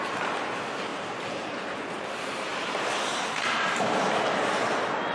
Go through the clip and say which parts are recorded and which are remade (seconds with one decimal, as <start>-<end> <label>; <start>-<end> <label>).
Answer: 0.0-0.9 recorded; 0.9-4.0 remade; 4.0-5.1 recorded